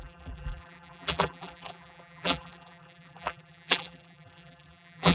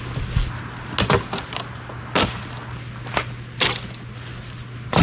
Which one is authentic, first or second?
second